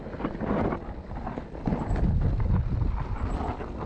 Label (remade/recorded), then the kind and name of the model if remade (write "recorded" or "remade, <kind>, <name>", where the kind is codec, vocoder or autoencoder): recorded